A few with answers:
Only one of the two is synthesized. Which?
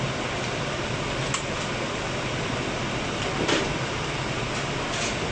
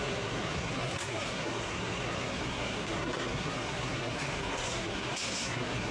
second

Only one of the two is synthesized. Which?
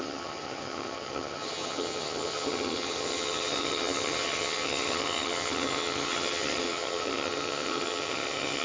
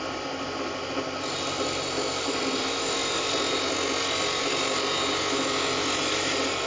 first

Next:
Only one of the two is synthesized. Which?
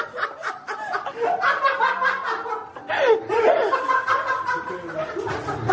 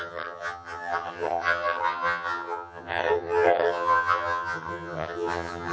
second